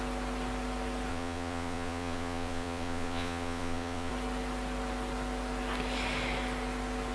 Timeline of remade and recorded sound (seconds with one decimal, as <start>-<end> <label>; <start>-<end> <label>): 0.0-1.1 recorded; 1.1-4.1 remade; 4.1-7.1 recorded